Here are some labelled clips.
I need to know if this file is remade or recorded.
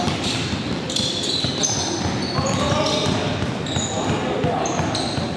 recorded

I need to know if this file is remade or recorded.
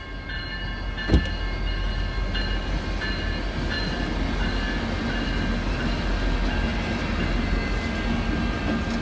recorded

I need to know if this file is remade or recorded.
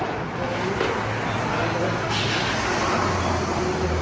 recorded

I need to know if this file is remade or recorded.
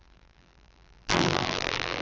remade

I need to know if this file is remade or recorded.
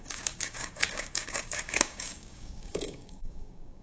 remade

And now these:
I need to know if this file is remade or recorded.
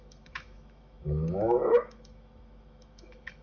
remade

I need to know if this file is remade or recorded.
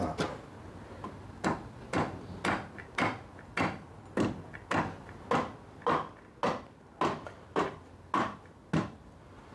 recorded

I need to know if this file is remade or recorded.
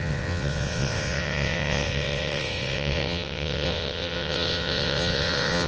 remade